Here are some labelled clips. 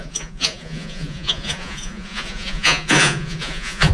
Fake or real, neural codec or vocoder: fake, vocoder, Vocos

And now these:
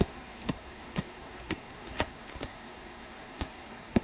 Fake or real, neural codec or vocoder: fake, codec, SNAC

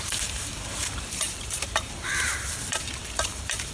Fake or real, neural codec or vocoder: fake, vocoder, BigVGAN v2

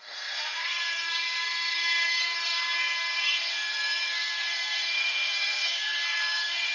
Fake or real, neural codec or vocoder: fake, codec, SNAC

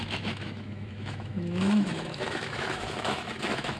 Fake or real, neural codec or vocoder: fake, autoencoder, DAC-VAE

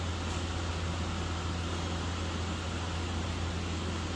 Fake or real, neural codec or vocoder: real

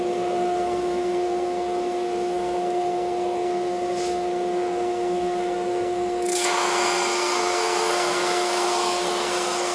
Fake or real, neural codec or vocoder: fake, codec, SNAC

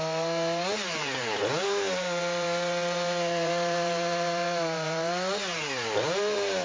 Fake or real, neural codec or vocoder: fake, vocoder, BigVGAN v2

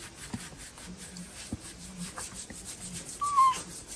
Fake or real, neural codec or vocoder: real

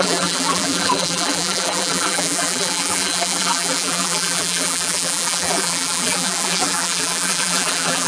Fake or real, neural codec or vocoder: fake, vocoder, BigVGAN v2